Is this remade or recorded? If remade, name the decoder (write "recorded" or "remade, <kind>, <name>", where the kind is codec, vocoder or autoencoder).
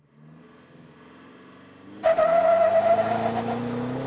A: recorded